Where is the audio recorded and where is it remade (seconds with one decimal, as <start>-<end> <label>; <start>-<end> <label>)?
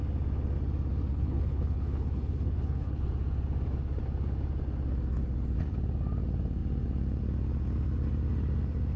0.0-1.1 recorded; 1.1-3.0 remade; 3.0-9.0 recorded